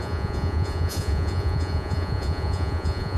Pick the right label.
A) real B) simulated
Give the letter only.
B